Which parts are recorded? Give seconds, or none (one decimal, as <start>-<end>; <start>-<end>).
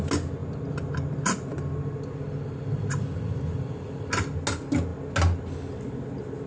0.0-6.5